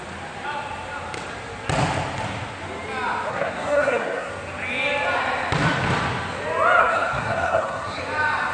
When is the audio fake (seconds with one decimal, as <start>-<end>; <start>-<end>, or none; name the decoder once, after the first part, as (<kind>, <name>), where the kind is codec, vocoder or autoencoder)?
3.3-4.3 (codec, SNAC); 6.8-8.0